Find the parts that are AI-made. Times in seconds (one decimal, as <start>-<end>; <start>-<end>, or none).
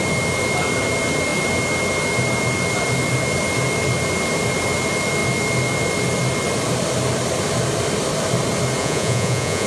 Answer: 8.8-9.7